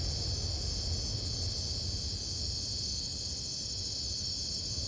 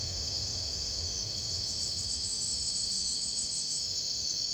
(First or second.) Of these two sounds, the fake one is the second